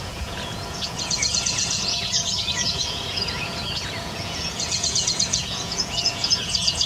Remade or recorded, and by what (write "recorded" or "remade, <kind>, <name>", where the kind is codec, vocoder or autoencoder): remade, vocoder, Vocos